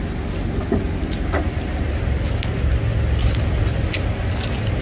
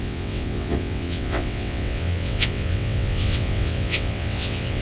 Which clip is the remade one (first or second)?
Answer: second